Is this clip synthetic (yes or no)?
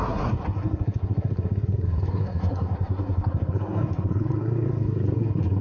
yes